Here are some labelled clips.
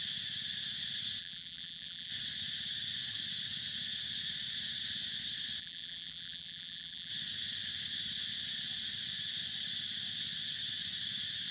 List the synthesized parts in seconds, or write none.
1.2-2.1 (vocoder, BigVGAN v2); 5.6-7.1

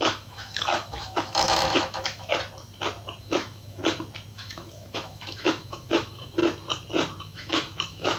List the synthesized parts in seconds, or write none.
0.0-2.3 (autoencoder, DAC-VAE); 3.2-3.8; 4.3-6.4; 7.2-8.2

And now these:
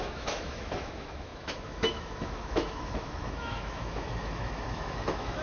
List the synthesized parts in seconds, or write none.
0.0-5.4 (autoencoder, DAC-VAE)